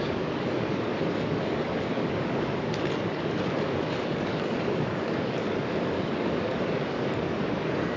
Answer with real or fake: fake